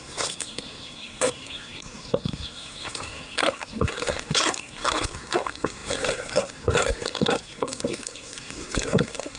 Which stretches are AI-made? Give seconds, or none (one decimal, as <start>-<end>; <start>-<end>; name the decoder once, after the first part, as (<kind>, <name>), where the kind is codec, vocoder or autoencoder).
0.0-9.4 (codec, SNAC)